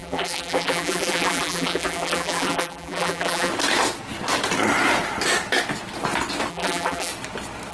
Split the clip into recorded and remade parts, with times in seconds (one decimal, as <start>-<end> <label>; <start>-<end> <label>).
0.0-3.5 remade; 3.5-6.5 recorded; 6.5-7.1 remade; 7.1-7.7 recorded